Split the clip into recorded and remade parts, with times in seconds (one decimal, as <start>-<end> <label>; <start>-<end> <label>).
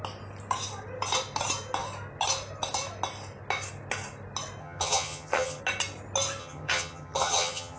0.0-4.6 recorded; 4.6-5.6 remade; 5.6-6.4 recorded; 6.4-7.8 remade